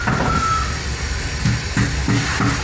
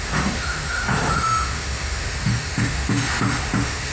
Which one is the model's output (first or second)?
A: second